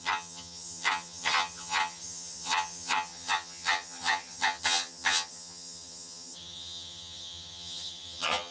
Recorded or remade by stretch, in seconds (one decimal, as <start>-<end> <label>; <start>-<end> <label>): 0.0-8.5 remade